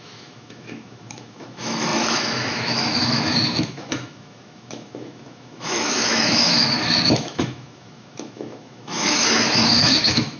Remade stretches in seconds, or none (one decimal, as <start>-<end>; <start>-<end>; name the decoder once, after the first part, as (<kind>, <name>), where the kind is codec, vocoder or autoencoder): 0.0-10.4 (autoencoder, DAC-VAE)